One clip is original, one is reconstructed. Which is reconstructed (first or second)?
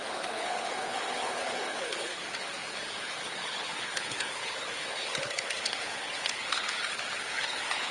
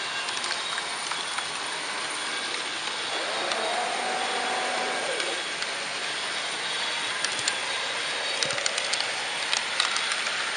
first